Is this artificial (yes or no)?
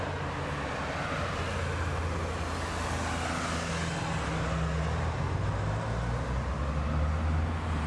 no